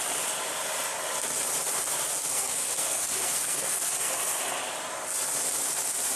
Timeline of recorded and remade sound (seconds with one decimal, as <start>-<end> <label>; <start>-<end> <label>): 0.0-2.3 recorded; 2.3-4.4 remade; 4.4-6.2 recorded